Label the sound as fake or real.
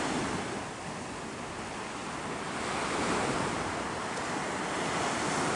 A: real